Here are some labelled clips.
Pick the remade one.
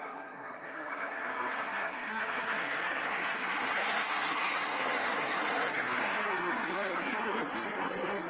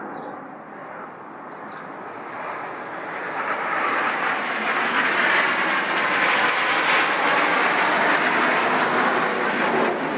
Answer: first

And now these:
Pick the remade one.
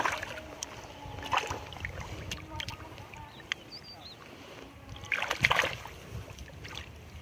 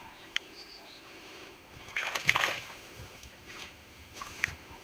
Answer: second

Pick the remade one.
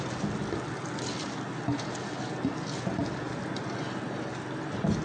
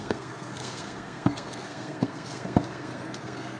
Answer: second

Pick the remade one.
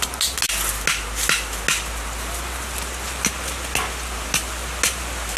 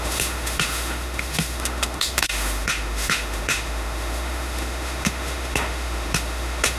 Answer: second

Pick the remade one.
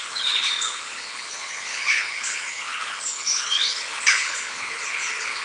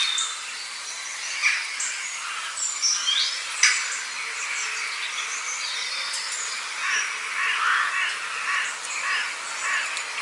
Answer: first